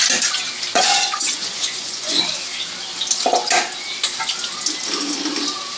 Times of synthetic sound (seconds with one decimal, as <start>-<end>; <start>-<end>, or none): 0.7-2.2